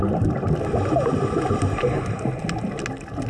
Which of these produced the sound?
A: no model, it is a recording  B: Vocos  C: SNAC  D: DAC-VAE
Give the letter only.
A